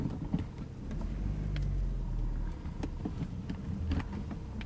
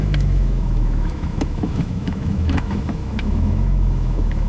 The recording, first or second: first